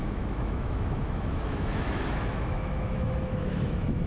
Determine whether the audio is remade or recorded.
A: remade